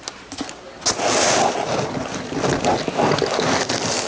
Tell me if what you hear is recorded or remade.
recorded